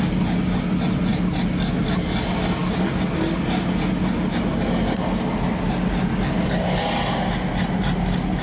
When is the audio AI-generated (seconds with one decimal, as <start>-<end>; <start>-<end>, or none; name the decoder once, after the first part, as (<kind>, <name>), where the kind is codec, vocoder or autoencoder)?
none